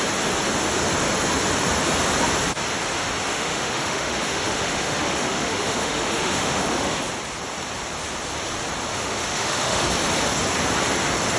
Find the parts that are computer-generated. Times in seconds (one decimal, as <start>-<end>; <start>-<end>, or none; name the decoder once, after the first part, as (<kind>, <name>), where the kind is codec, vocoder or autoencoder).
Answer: 3.3-7.0 (autoencoder, DAC-VAE); 8.9-9.9